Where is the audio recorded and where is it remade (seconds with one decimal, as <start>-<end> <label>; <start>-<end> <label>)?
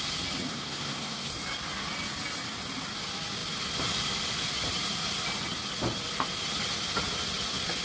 0.0-0.5 recorded; 0.5-1.3 remade; 1.3-7.8 recorded